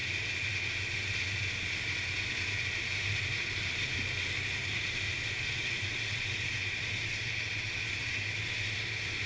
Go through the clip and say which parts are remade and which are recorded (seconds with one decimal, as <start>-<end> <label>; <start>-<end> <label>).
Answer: 0.0-9.3 recorded